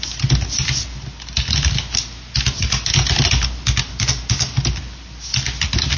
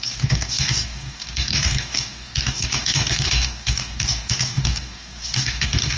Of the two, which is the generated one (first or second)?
second